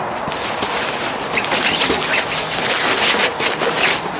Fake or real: real